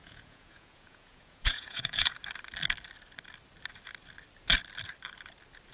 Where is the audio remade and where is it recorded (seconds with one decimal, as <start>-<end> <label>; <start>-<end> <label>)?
0.0-2.1 remade; 2.1-5.7 recorded